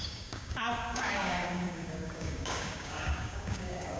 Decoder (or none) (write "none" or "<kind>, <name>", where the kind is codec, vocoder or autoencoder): codec, DAC